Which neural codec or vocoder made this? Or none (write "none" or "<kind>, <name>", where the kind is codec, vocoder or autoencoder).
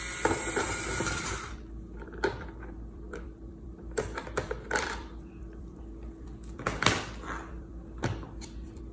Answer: vocoder, BigVGAN v2